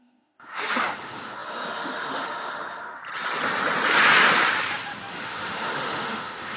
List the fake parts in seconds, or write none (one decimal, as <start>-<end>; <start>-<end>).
0.0-3.0; 5.1-6.6